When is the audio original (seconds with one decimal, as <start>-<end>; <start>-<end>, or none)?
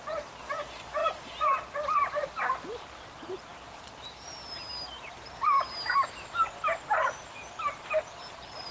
0.0-8.7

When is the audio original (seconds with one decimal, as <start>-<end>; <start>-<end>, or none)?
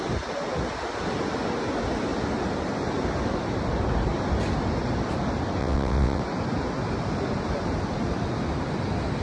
0.0-5.6; 6.2-9.2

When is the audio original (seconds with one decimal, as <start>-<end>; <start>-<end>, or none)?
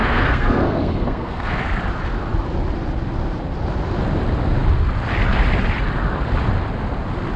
1.6-7.4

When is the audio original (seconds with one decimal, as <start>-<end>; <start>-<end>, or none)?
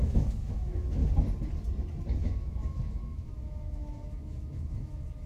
1.0-2.2